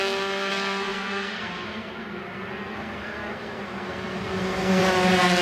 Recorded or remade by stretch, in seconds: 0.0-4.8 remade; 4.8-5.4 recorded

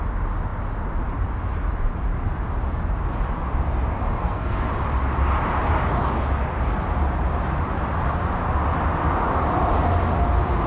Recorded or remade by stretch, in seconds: 0.0-4.2 recorded; 4.2-4.7 remade; 4.7-10.7 recorded

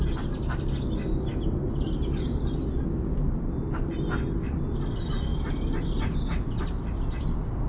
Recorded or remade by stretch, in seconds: 0.0-7.7 recorded

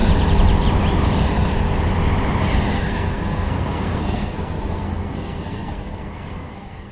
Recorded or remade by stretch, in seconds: 0.0-2.7 recorded; 2.7-6.9 remade

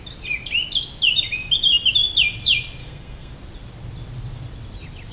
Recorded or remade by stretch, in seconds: 0.0-2.8 recorded; 2.8-3.3 remade; 3.3-5.1 recorded